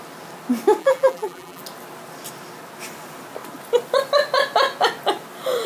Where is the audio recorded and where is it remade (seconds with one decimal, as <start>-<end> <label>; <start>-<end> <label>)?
0.0-0.8 recorded; 0.8-1.6 remade; 1.6-5.7 recorded